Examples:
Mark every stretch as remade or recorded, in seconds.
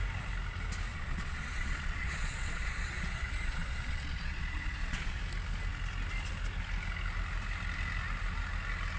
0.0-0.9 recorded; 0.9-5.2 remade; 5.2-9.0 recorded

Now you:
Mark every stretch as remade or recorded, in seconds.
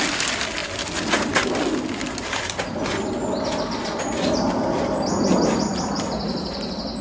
0.0-7.0 recorded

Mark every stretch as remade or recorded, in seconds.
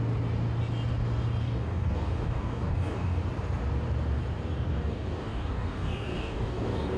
0.0-1.4 recorded; 1.4-3.2 remade; 3.2-4.7 recorded; 4.7-7.0 remade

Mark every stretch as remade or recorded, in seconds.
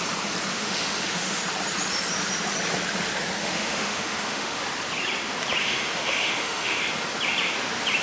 0.0-0.5 recorded; 0.5-1.4 remade; 1.4-3.4 recorded; 3.4-4.6 remade; 4.6-5.6 recorded; 5.6-6.8 remade; 6.8-8.0 recorded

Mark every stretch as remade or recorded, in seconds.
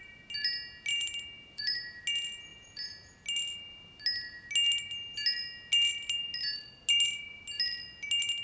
0.0-0.9 recorded; 0.9-2.0 remade; 2.0-2.5 recorded; 2.5-3.1 remade; 3.1-8.4 recorded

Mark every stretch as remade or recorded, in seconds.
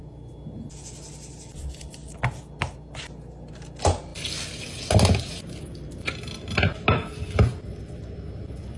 0.0-8.8 recorded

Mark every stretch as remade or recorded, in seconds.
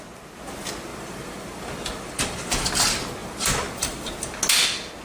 0.0-0.9 recorded; 0.9-2.5 remade; 2.5-3.2 recorded; 3.2-4.1 remade; 4.1-5.0 recorded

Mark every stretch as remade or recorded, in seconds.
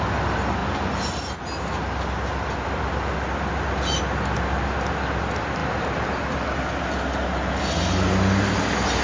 0.0-9.0 recorded